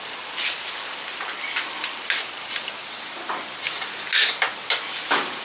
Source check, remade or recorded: recorded